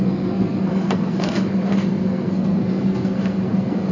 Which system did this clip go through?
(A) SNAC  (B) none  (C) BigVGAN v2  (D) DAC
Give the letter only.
A